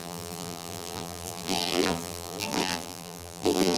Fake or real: fake